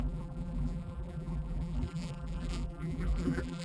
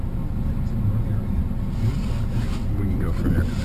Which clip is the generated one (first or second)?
first